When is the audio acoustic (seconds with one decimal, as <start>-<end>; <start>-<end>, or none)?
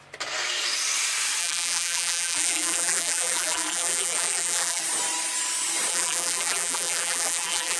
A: 0.0-1.4; 4.8-5.9